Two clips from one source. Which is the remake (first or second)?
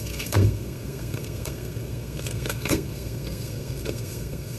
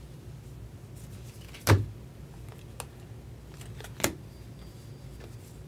first